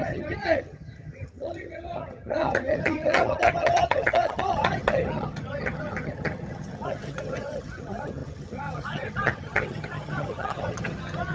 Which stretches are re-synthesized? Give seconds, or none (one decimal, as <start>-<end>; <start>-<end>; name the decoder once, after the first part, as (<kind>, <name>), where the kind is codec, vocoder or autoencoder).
0.0-11.3 (vocoder, HiFi-GAN)

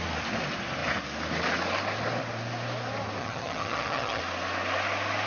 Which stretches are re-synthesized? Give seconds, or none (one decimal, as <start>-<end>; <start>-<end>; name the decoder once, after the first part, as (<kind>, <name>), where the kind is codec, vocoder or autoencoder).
3.2-4.2 (vocoder, HiFi-GAN)

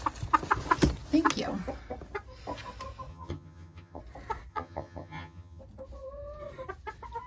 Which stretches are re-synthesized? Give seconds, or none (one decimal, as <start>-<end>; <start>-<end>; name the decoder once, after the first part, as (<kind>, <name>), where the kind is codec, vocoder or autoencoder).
3.1-4.0 (vocoder, HiFi-GAN); 4.5-5.6